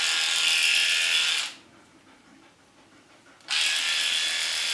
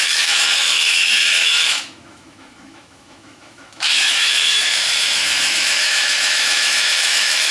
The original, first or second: first